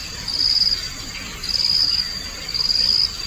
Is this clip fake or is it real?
real